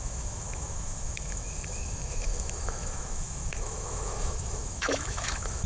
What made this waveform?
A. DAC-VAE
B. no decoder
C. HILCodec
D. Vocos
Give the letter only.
A